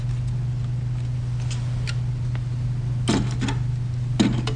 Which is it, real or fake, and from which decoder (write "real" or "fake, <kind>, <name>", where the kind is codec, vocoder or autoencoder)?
real